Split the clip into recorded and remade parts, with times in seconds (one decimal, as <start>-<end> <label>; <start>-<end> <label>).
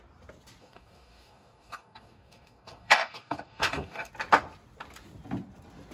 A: 0.0-0.6 recorded; 0.6-4.1 remade; 4.1-5.9 recorded